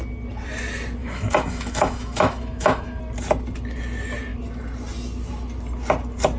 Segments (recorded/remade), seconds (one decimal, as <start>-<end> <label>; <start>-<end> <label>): 0.0-1.0 recorded; 1.0-3.0 remade; 3.0-6.4 recorded